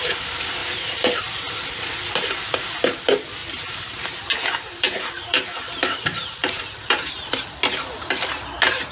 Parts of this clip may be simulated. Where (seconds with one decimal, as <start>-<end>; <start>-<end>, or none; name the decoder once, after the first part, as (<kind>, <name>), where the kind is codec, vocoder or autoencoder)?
0.6-1.6 (vocoder, BigVGAN v2); 3.4-7.3